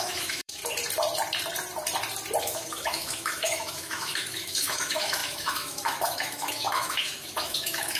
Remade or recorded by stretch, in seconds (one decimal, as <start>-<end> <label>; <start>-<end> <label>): 0.0-0.6 remade; 0.6-2.4 recorded; 2.4-8.0 remade